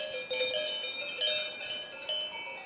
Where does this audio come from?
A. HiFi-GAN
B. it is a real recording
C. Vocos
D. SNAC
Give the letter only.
B